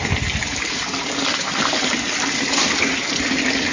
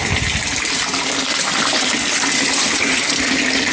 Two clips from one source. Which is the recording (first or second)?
second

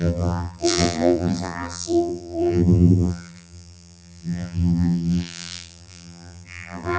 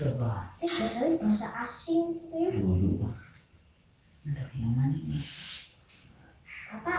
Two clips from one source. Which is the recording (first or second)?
second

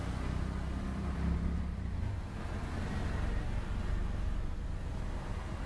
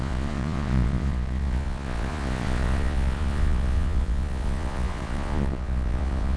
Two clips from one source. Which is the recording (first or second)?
first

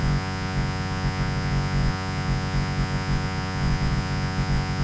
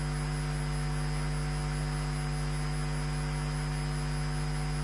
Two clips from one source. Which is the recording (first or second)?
second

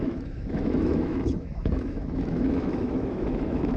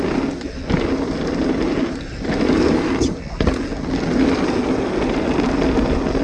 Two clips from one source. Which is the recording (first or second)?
second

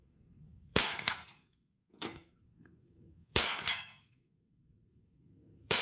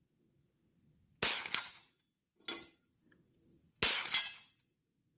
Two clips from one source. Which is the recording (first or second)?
second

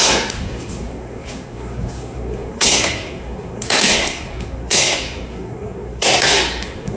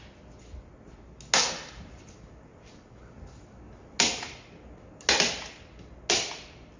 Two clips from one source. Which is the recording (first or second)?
second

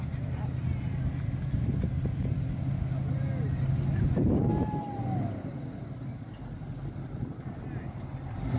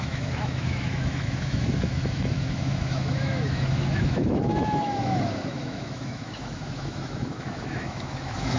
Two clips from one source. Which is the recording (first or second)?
first